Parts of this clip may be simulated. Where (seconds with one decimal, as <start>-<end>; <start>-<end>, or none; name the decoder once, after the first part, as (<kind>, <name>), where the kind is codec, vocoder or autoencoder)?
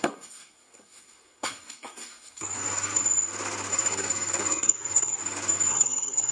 0.0-3.0 (codec, SNAC); 3.7-5.2; 5.7-6.3